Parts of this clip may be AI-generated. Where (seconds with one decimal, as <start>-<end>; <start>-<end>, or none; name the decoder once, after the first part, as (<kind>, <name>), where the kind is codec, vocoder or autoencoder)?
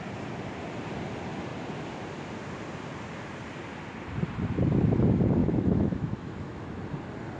5.4-6.8 (autoencoder, DAC-VAE)